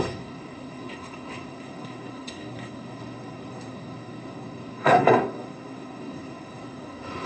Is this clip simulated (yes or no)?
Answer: yes